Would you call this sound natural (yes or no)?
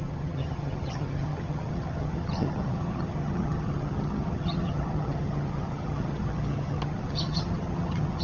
no